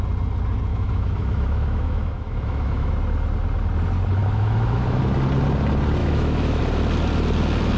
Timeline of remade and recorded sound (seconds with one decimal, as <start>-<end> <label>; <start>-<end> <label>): 0.0-0.7 recorded; 0.7-2.9 remade; 2.9-4.2 recorded; 4.2-5.0 remade; 5.0-6.0 recorded; 6.0-6.6 remade; 6.6-7.8 recorded

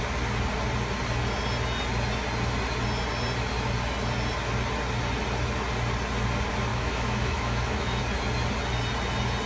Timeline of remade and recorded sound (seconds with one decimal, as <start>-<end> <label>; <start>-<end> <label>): 0.0-6.7 recorded; 6.7-8.0 remade; 8.0-9.5 recorded

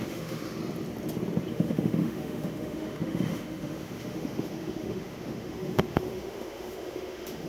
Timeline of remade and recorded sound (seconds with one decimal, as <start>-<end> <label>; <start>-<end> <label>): 0.0-0.6 remade; 0.6-1.5 recorded; 1.5-7.5 remade

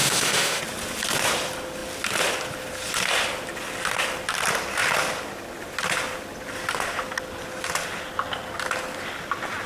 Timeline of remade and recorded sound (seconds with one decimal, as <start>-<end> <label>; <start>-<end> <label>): 0.0-0.6 remade; 0.6-9.7 recorded

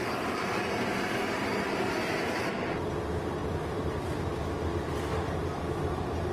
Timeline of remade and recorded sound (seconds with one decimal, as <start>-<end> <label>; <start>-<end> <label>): 0.0-6.3 recorded